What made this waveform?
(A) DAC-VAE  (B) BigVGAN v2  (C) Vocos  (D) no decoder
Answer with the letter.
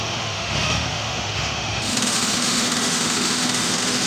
A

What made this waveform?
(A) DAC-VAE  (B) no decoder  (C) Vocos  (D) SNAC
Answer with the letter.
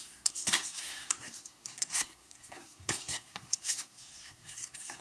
D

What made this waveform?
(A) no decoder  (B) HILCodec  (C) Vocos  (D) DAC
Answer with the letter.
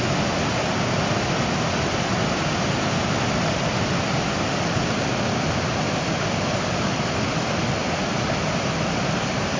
A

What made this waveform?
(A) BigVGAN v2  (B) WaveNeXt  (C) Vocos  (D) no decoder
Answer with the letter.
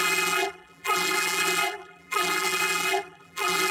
A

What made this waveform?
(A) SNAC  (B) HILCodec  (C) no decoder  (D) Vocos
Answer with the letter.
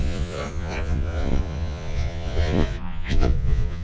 D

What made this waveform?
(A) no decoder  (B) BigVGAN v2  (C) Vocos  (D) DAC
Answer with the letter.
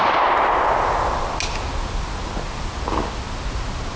A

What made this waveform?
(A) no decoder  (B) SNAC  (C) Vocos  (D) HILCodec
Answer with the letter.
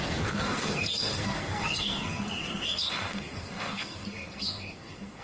B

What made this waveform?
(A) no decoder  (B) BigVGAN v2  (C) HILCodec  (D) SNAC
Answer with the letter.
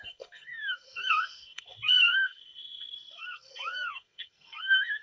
D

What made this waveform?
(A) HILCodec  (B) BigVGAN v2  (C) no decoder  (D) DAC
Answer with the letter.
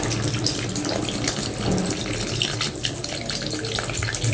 C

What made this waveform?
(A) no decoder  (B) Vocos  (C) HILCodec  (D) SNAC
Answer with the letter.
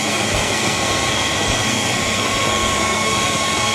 D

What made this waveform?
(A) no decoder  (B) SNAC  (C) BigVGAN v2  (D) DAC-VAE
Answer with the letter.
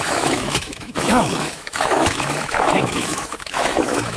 D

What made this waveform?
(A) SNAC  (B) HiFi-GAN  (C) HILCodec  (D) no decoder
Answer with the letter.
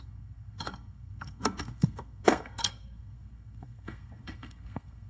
A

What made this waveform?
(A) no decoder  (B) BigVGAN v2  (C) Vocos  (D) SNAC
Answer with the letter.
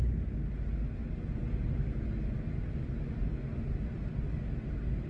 A